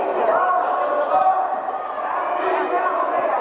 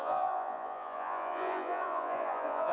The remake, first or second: second